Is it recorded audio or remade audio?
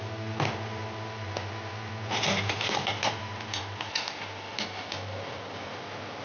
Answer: recorded